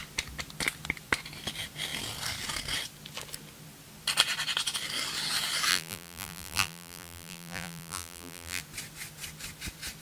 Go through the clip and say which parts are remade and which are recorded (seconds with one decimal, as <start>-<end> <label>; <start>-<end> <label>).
0.0-5.7 recorded; 5.7-8.6 remade; 8.6-10.0 recorded